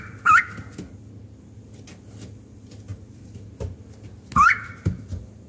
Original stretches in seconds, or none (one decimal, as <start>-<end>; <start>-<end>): 0.0-5.5